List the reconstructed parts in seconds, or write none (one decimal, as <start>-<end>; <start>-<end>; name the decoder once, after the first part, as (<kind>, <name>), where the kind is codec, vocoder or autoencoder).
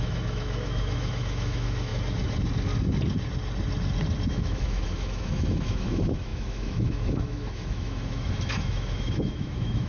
0.0-1.9 (autoencoder, DAC-VAE); 4.3-9.9